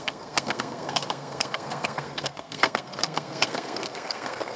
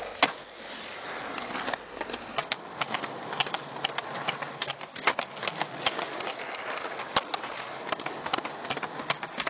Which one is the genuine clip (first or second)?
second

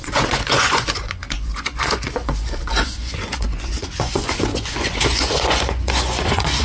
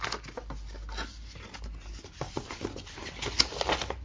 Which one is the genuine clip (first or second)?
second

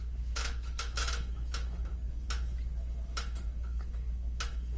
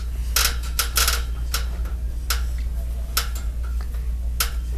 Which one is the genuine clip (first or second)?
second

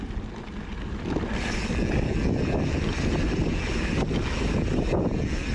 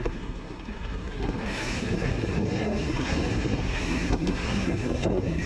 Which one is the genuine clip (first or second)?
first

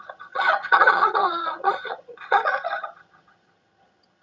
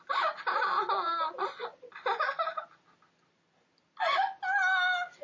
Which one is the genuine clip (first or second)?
second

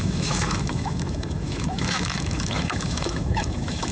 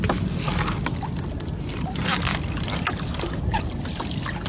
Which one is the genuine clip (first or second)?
second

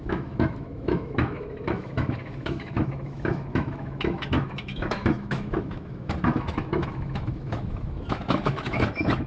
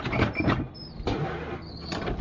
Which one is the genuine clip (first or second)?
second